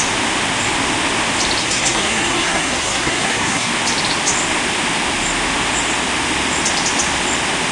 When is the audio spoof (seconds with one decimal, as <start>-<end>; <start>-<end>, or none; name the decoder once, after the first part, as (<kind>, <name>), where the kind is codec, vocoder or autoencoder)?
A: 1.6-3.7 (codec, SNAC)